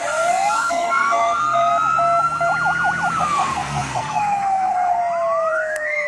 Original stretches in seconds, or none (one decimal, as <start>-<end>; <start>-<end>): 1.7-3.2; 5.0-5.5